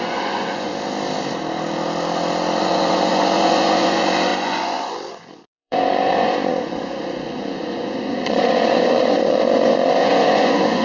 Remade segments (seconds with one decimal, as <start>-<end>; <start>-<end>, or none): 0.0-0.7; 2.6-10.8

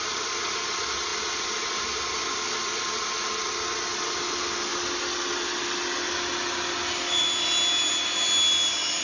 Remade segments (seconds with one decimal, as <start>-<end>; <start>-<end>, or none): none

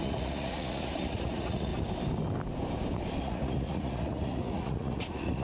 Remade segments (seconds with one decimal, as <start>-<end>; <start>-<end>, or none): 0.0-1.7; 3.2-5.4

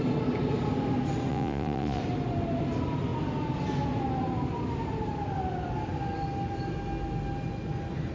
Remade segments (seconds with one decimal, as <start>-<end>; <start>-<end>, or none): 1.3-2.0

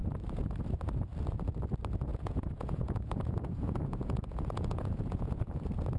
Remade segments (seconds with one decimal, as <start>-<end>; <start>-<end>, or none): 2.1-5.6

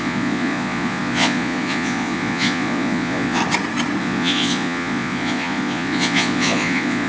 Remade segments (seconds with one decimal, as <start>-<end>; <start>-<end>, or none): 0.0-3.4; 4.0-7.1